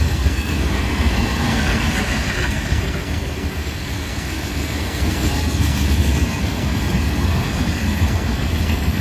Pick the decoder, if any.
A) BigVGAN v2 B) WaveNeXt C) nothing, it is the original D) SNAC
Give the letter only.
D